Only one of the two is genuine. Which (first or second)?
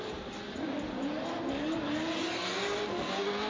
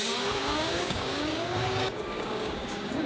first